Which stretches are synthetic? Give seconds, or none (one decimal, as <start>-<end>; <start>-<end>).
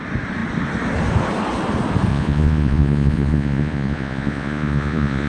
2.1-5.3